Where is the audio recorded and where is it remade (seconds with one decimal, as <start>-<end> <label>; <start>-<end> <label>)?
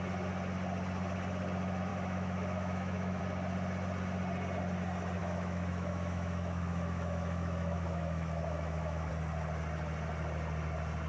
0.0-1.9 recorded; 1.9-3.2 remade; 3.2-5.2 recorded; 5.2-9.1 remade; 9.1-11.1 recorded